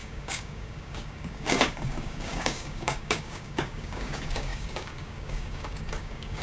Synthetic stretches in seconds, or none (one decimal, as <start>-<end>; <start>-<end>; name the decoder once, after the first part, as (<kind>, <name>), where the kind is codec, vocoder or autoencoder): 0.0-6.4 (codec, DAC)